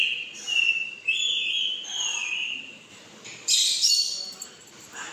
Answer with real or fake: fake